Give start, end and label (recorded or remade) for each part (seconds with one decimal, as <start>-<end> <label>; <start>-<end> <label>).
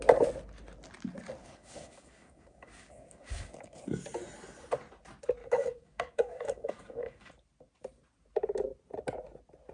0.0-1.4 recorded; 1.4-3.8 remade; 3.8-5.4 recorded; 5.4-7.3 remade; 7.3-9.7 recorded